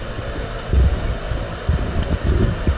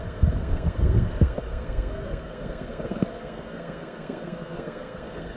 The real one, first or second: first